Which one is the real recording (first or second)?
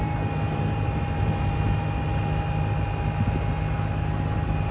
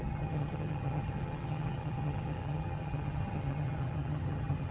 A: first